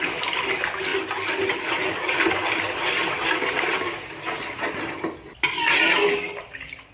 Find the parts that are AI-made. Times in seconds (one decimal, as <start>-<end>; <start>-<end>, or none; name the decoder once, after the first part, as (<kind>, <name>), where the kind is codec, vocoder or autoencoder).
none